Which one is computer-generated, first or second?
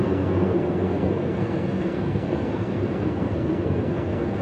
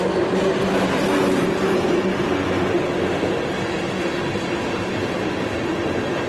first